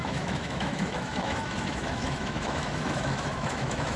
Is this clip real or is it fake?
fake